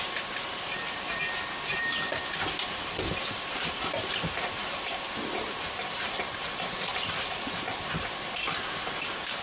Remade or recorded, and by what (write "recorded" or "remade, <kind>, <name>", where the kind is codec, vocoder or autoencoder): remade, vocoder, BigVGAN v2